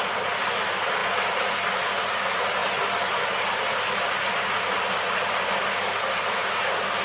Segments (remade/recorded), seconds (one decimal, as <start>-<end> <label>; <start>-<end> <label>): 0.0-7.0 recorded